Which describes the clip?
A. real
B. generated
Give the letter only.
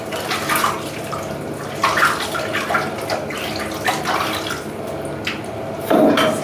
A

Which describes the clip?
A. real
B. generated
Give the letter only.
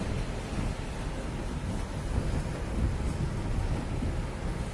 A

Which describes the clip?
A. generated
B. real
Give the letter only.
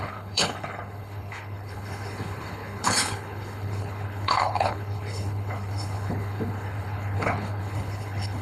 A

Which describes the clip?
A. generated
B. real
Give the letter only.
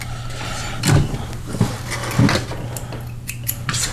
B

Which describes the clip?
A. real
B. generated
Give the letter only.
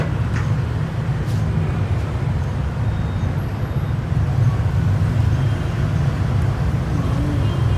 A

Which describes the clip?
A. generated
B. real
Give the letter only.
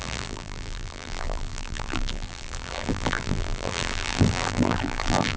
A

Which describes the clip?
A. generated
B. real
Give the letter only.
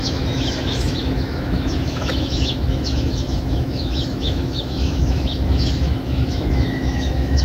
A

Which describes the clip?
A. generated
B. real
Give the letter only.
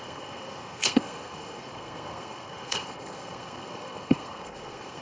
A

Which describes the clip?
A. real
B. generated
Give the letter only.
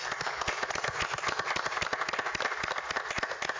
A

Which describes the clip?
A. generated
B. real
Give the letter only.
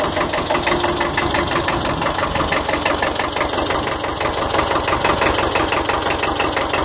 B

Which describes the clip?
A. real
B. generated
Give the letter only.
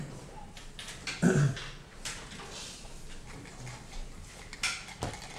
A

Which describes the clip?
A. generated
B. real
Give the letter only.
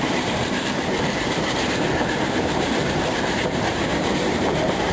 A